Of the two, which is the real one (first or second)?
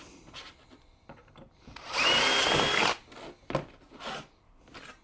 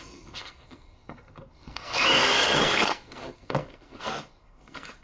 first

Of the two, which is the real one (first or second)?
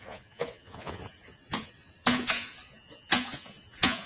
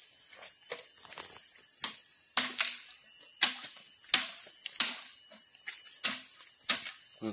second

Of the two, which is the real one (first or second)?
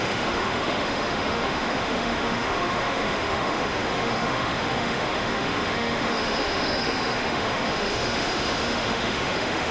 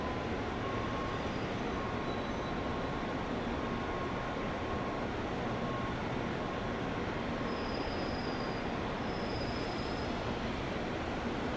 second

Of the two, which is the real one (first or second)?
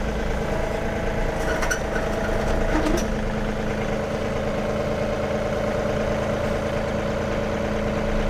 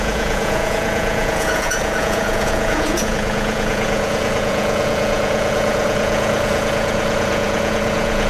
first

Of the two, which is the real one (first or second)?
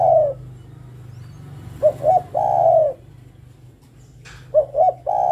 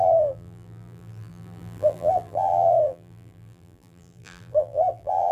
first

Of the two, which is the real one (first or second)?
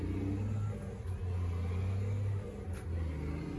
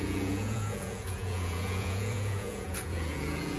first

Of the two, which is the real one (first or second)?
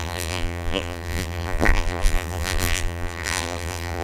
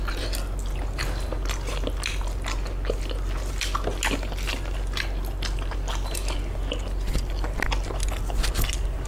second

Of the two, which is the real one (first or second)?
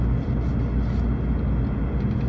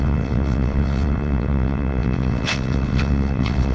first